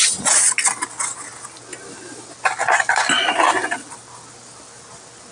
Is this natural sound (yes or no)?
yes